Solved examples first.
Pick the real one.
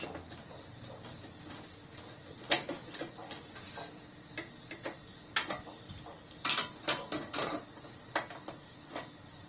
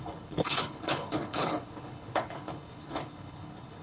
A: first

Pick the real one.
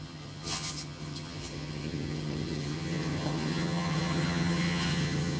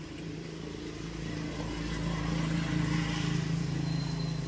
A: second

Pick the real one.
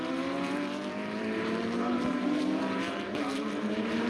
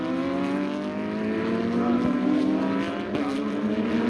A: second